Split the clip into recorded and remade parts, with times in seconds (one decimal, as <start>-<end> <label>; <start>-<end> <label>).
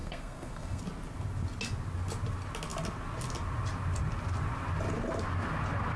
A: 0.0-0.8 remade; 0.8-6.0 recorded